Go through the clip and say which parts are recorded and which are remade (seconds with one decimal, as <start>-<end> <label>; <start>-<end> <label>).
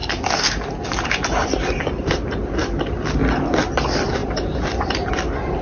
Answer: 0.0-2.1 remade; 2.1-4.2 recorded; 4.2-5.1 remade; 5.1-5.6 recorded